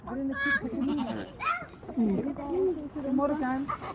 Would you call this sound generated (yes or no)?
no